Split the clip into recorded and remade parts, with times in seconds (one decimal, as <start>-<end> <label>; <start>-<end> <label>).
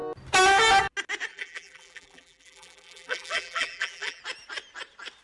0.0-1.3 recorded; 1.3-4.2 remade; 4.2-5.2 recorded